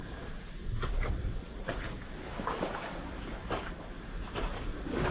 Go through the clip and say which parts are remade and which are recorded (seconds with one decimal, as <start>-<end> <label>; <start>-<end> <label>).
0.0-0.6 recorded; 0.6-1.8 remade; 1.8-5.1 recorded